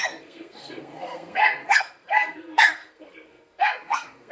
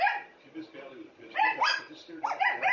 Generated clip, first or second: first